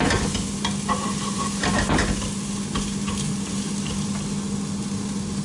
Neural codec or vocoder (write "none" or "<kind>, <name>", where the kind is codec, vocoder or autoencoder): none